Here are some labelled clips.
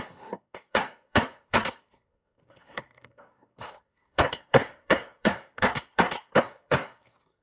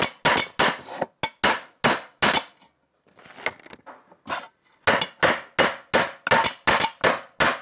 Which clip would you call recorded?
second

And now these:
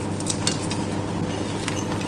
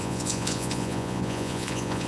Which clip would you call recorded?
first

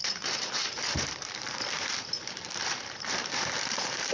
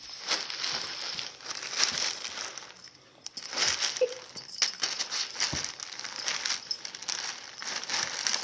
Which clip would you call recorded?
second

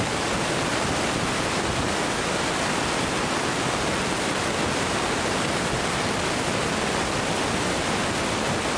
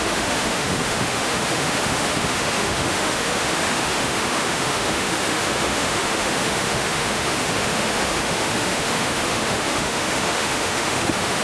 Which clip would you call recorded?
first